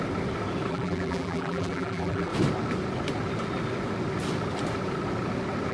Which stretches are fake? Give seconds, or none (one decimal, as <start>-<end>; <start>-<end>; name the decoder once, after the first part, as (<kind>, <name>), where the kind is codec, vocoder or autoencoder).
0.7-2.3 (vocoder, BigVGAN v2)